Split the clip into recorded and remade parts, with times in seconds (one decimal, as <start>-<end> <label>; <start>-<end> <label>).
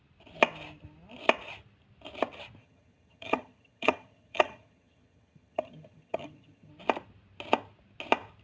0.0-2.6 recorded; 2.6-6.7 remade; 6.7-8.4 recorded